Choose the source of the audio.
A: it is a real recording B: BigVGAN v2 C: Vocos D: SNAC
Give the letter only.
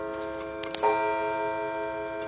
A